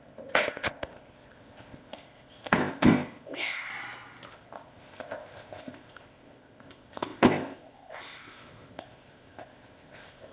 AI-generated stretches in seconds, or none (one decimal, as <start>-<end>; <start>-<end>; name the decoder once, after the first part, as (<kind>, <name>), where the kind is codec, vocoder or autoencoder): 0.0-3.7 (codec, ZipCodec); 4.3-10.3